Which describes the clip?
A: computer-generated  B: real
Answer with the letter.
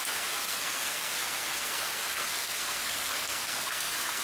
A